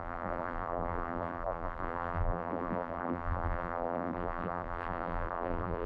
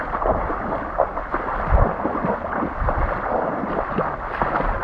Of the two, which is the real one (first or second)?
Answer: second